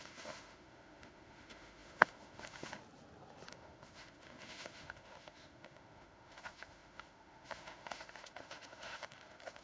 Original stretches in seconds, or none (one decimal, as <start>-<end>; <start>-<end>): 2.8-3.5